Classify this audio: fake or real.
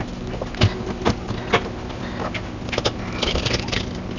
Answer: real